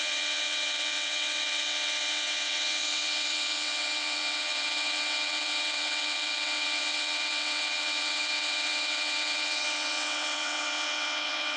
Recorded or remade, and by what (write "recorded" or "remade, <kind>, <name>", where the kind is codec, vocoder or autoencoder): remade, vocoder, WaveNeXt